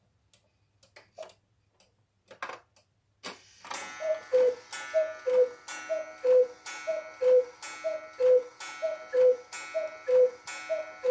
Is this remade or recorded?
recorded